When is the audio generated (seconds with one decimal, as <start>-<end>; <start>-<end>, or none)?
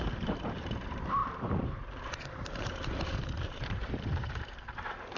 0.0-5.2